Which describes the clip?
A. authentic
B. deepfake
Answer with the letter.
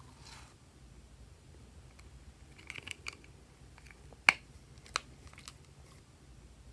A